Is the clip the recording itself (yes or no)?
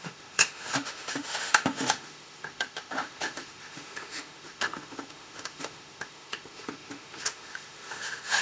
no